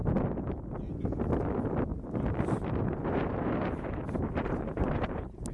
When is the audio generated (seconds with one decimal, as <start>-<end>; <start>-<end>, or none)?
1.9-5.5